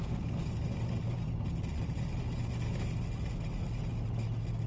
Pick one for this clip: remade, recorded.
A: recorded